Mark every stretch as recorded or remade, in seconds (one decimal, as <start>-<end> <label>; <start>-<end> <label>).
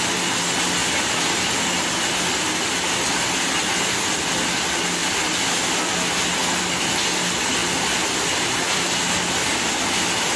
0.0-10.4 recorded